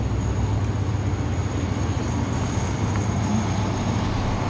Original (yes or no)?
yes